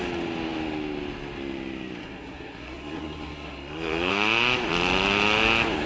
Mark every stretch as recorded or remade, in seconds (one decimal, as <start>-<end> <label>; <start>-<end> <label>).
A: 0.0-2.0 recorded; 2.0-4.1 remade; 4.1-5.9 recorded